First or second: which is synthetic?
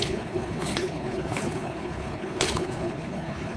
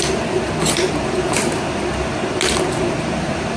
first